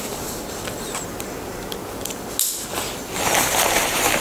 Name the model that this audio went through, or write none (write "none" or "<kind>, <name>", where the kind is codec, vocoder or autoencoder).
none